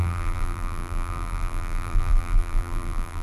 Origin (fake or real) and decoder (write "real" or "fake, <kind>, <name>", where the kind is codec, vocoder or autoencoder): fake, vocoder, BigVGAN v2